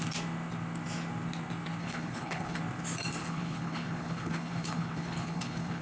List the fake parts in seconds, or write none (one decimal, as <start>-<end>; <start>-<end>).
1.8-2.6; 3.2-5.8